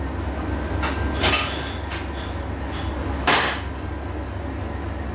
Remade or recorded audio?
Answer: recorded